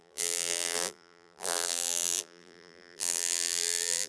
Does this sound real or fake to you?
fake